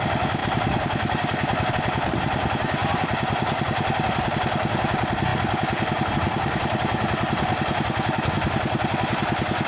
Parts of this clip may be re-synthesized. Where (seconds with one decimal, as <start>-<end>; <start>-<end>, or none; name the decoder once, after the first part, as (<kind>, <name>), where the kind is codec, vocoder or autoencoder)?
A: 2.8-4.3 (vocoder, BigVGAN v2)